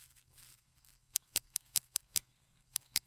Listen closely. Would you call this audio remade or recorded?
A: remade